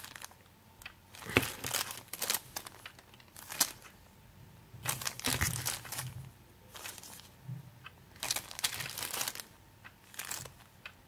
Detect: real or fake real